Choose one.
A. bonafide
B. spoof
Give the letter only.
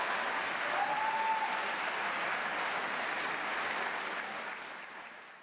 A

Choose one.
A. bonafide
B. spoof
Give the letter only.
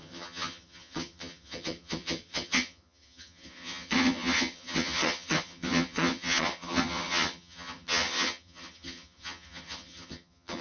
B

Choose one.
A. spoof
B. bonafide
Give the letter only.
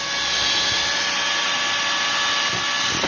B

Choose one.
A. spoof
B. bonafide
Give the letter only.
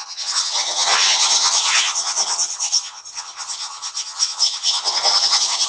A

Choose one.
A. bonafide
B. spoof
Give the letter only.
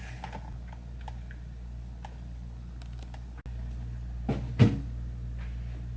A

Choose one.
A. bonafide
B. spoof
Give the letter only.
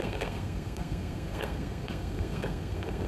B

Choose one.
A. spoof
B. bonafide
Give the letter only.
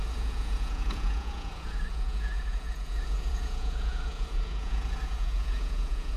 A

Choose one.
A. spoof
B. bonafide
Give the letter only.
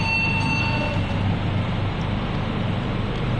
B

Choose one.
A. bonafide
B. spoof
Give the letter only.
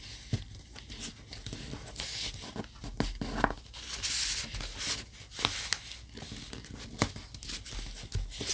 A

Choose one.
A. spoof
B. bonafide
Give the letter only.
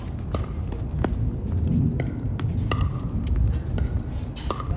B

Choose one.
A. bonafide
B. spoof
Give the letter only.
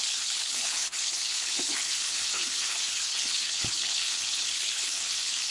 B